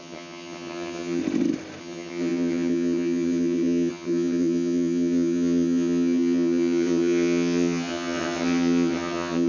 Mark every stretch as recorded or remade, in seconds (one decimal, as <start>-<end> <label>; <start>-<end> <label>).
0.0-1.2 remade; 1.2-1.8 recorded; 1.8-9.5 remade